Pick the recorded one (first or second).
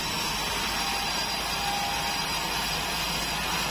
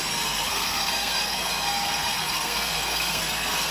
first